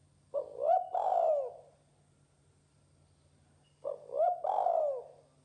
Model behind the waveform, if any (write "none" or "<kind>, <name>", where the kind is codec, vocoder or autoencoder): none